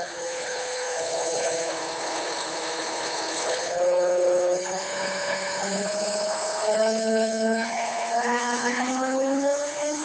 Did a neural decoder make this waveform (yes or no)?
yes